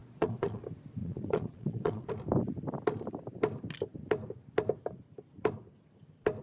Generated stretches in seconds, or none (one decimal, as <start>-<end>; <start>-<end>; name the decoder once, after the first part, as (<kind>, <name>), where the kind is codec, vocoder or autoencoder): 0.0-0.6 (vocoder, Vocos); 1.0-2.1